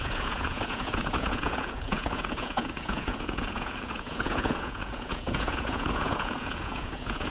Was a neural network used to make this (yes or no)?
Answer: yes